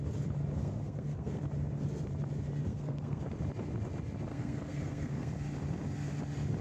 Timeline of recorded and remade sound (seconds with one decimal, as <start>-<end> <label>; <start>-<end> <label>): 0.0-0.6 recorded; 0.6-1.4 remade; 1.4-2.7 recorded; 2.7-3.2 remade; 3.2-4.3 recorded; 4.3-5.3 remade; 5.3-6.6 recorded